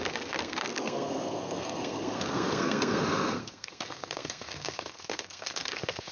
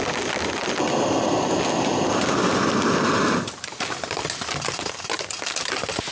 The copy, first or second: first